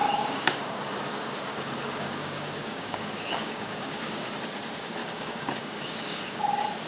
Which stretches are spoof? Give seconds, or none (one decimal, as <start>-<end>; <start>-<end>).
0.0-0.9; 1.5-4.3; 5.0-6.4